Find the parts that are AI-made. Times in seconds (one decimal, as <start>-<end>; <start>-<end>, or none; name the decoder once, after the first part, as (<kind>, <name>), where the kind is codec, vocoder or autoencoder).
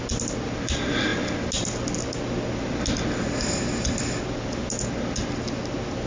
none